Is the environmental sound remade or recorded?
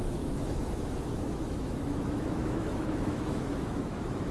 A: remade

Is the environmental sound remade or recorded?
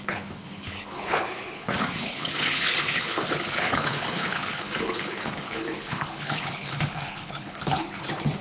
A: remade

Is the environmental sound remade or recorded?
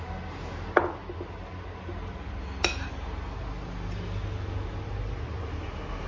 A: recorded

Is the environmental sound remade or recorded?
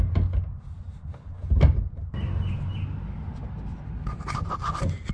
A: recorded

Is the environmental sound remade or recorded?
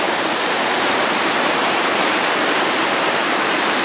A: remade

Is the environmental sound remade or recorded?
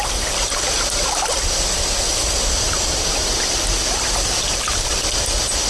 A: recorded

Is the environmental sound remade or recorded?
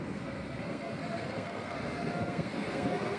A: remade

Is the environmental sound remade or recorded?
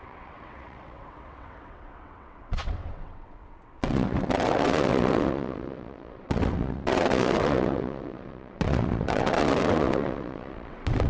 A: remade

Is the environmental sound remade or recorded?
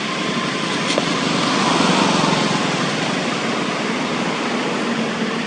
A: recorded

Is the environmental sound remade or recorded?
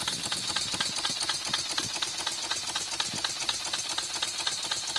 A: recorded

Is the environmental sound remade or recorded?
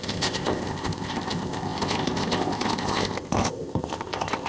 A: remade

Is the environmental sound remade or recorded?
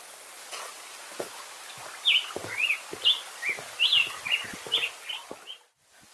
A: recorded